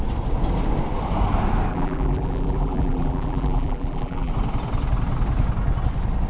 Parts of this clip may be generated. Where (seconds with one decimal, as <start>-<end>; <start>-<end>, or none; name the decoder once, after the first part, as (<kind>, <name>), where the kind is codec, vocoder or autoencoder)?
1.7-4.3 (vocoder, BigVGAN v2)